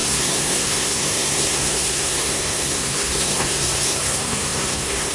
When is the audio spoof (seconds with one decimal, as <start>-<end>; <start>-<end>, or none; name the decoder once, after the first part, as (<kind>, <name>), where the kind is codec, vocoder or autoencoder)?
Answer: 0.0-5.1 (codec, SNAC)